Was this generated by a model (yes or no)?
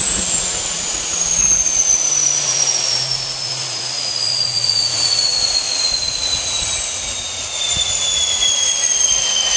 yes